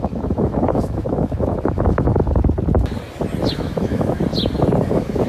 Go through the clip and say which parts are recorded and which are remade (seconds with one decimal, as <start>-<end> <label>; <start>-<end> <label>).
0.0-2.2 remade; 2.2-3.5 recorded; 3.5-4.2 remade; 4.2-4.8 recorded; 4.8-5.3 remade

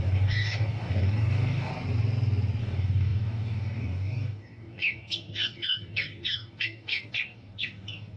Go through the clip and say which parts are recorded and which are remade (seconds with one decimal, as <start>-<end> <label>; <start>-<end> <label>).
0.0-1.7 remade; 1.7-2.6 recorded; 2.6-8.2 remade

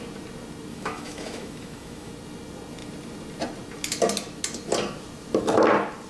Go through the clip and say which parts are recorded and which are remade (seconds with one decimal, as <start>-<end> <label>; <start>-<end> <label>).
0.0-0.7 recorded; 0.7-2.1 remade; 2.1-6.1 recorded

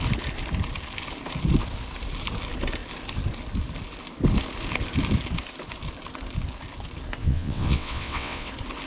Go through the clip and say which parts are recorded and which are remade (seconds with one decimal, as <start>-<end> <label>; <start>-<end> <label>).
0.0-7.2 recorded; 7.2-8.5 remade; 8.5-8.9 recorded

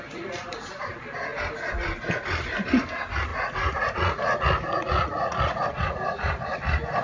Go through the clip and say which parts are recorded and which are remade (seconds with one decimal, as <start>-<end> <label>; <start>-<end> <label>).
0.0-3.3 recorded; 3.3-5.6 remade; 5.6-7.0 recorded

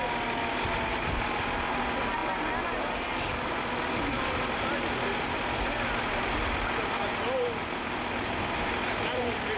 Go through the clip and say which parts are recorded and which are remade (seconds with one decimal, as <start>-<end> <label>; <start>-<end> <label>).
0.0-9.6 recorded

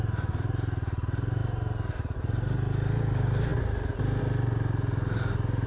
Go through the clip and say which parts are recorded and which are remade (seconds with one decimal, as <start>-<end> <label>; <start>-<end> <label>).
0.0-5.7 recorded